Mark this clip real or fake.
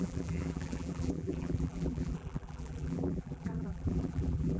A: fake